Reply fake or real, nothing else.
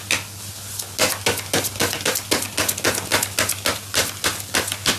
real